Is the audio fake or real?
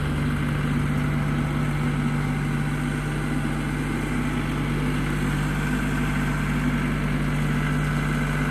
real